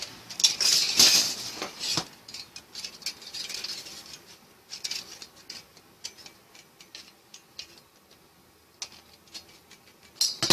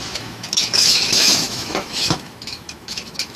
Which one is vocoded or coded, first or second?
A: second